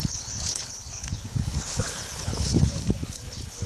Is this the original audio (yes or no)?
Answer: no